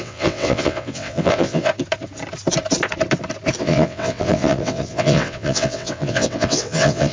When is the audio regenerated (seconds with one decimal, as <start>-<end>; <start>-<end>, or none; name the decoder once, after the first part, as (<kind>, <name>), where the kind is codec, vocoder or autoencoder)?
0.0-1.7 (vocoder, WaveNeXt); 3.6-7.1